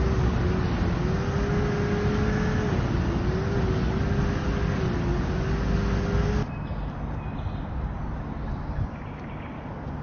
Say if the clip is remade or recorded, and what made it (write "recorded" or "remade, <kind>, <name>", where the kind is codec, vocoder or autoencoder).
recorded